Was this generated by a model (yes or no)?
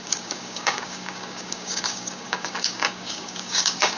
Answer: yes